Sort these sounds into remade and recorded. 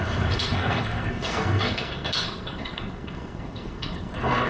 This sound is remade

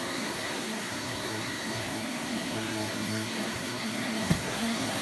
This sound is remade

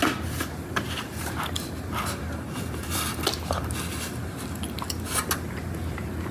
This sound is recorded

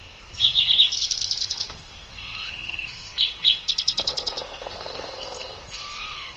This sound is remade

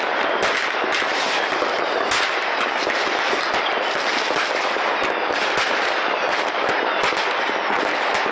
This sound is recorded